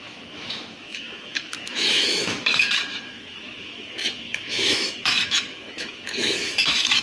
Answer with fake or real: fake